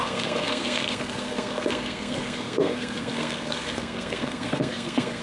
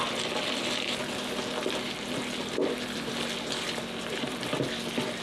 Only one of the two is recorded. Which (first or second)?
second